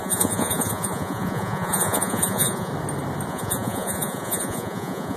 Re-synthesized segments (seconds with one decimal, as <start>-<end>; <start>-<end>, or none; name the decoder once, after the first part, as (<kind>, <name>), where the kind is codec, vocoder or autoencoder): 0.0-2.7 (vocoder, Vocos); 3.3-5.2